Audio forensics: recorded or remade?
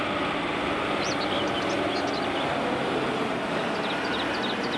recorded